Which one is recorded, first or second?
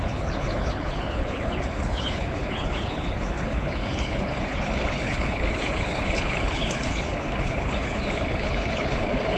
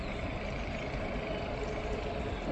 second